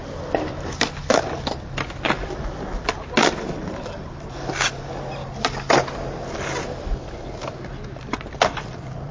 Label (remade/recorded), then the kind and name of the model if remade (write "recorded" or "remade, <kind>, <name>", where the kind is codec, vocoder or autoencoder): recorded